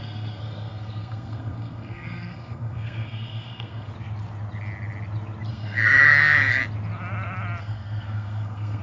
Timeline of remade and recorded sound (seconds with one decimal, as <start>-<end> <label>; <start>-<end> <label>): 0.0-3.9 remade; 3.9-5.5 recorded; 5.5-6.6 remade; 6.6-7.6 recorded; 7.6-8.8 remade